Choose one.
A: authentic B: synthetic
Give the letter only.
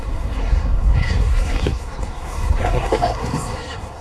B